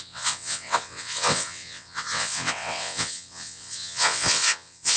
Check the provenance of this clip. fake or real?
fake